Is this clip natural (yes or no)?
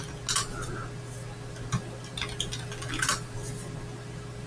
yes